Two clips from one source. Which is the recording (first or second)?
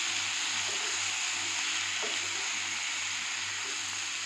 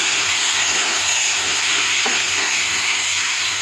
first